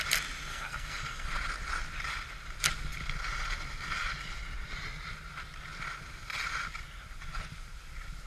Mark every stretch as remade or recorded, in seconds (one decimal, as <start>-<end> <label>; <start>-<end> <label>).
0.0-0.5 recorded; 0.5-1.3 remade; 1.3-8.3 recorded